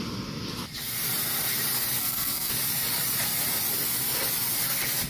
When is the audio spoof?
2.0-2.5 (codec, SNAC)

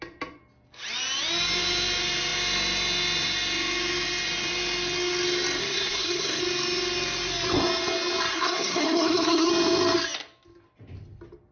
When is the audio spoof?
5.6-6.4 (codec, SNAC); 8.3-9.5

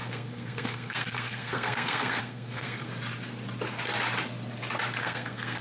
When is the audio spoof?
0.0-2.9 (codec, SNAC); 5.0-5.6

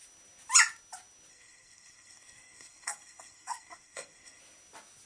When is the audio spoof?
1.3-4.4 (codec, SNAC)

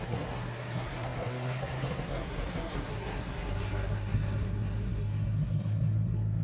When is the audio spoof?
0.0-6.4 (codec, SNAC)